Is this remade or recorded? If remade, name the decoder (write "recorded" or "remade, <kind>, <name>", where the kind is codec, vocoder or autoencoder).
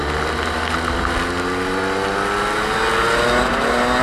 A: recorded